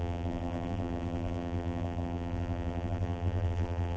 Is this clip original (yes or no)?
no